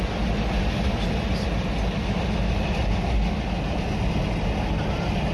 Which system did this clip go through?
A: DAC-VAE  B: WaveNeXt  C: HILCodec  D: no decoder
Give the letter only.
D